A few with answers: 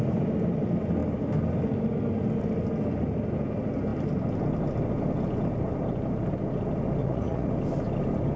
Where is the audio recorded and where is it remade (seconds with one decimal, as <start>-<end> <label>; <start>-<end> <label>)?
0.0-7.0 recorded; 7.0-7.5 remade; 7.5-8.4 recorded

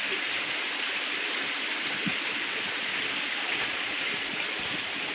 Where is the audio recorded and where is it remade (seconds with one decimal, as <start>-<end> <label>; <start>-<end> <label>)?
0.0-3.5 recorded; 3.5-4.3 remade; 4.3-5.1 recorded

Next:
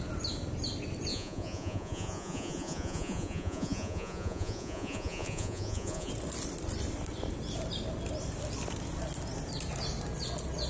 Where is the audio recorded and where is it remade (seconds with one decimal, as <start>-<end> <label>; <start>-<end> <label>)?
0.0-1.1 recorded; 1.1-6.1 remade; 6.1-10.7 recorded

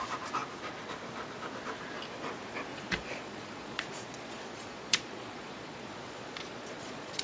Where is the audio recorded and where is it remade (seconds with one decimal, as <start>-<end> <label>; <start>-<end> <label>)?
0.0-2.7 recorded; 2.7-7.2 remade

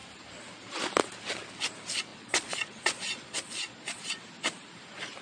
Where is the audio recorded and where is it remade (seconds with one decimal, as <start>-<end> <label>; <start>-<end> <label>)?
0.0-2.1 recorded; 2.1-4.0 remade; 4.0-5.2 recorded

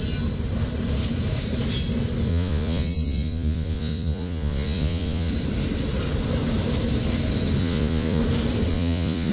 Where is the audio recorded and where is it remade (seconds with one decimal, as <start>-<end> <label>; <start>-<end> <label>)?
0.0-2.3 recorded; 2.3-5.3 remade; 5.3-7.6 recorded; 7.6-8.2 remade; 8.2-8.7 recorded; 8.7-9.3 remade